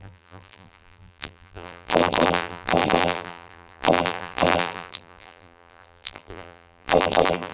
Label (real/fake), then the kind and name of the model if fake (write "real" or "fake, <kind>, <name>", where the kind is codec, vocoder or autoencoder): fake, vocoder, BigVGAN v2